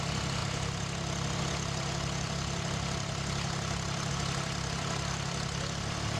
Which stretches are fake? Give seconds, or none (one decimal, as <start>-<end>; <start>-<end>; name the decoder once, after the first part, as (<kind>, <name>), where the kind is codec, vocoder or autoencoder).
none